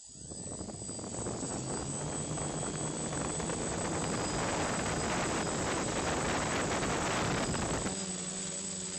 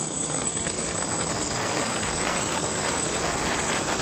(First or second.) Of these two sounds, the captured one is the first